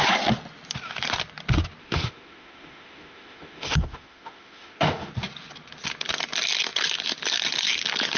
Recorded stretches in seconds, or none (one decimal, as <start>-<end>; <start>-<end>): 0.0-1.8; 5.1-8.2